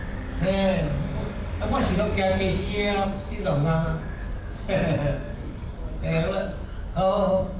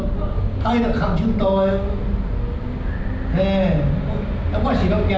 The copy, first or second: first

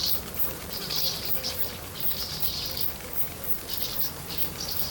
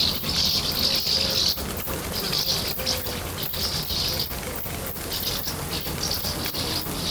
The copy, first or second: first